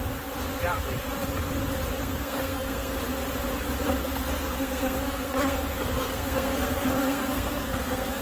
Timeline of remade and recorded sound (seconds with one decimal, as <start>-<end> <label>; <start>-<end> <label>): 0.0-2.0 recorded; 2.0-3.0 remade; 3.0-4.0 recorded; 4.0-8.2 remade